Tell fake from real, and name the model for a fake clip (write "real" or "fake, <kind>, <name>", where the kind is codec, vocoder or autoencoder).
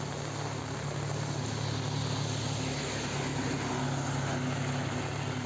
real